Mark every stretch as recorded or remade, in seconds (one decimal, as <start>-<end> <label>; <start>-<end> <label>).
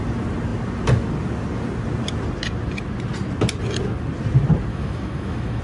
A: 0.0-4.7 recorded; 4.7-5.6 remade